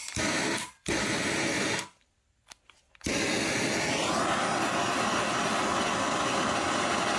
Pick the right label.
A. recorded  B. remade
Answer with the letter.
A